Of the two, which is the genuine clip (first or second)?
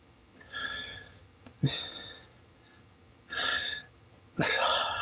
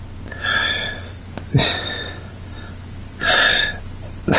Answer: second